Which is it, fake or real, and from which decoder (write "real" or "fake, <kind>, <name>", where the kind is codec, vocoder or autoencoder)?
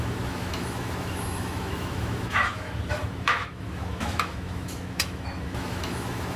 fake, autoencoder, DAC-VAE